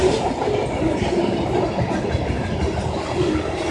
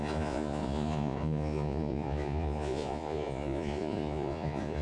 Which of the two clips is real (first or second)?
first